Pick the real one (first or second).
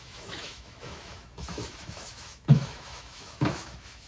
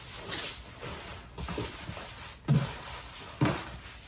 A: second